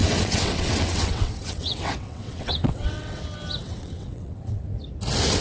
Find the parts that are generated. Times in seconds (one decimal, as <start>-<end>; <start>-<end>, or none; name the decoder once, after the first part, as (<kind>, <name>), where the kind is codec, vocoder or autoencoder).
0.0-3.2 (vocoder, WaveNeXt); 3.6-4.6